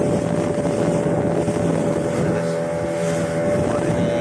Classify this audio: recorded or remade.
recorded